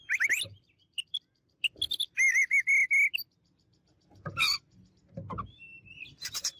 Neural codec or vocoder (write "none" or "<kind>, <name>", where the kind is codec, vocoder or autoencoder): none